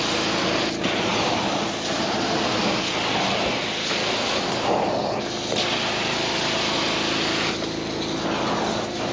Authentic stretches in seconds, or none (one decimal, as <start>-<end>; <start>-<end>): 0.0-9.1